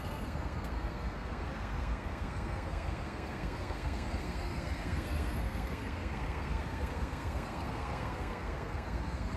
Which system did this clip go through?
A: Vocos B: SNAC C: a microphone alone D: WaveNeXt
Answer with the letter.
B